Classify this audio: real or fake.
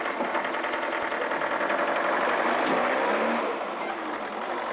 real